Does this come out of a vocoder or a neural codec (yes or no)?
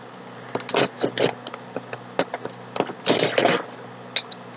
no